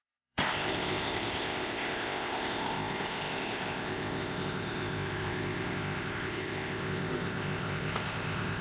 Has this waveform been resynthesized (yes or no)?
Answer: yes